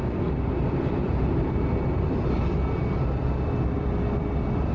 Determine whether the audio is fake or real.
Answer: real